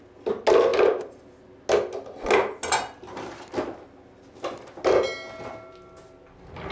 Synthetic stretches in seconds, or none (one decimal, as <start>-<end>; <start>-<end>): none